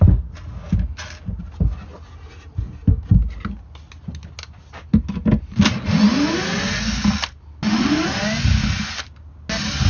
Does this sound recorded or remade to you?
recorded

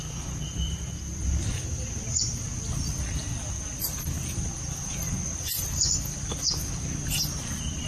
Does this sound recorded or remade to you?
remade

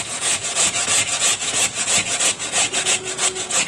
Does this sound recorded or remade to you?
remade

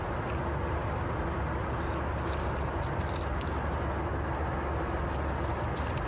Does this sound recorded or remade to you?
recorded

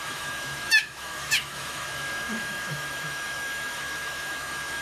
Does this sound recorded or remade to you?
remade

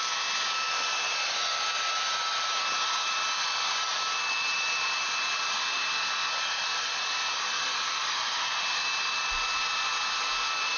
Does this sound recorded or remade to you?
recorded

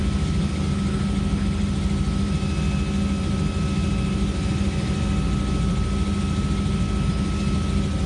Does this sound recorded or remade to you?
recorded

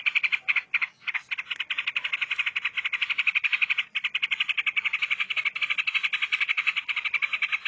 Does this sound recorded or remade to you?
recorded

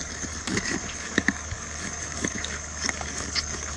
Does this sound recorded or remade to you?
remade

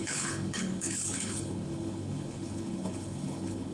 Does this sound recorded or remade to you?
remade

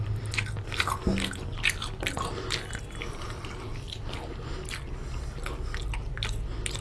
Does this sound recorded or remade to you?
recorded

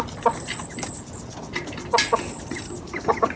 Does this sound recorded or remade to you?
recorded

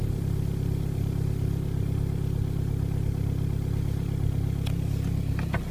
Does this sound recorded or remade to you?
recorded